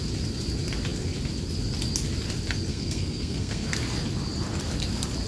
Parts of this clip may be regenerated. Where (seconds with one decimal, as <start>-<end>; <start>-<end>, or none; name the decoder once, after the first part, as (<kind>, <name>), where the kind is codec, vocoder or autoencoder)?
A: 2.7-3.7 (codec, SNAC)